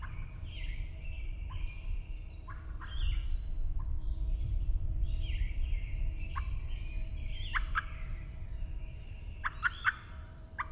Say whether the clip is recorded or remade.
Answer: remade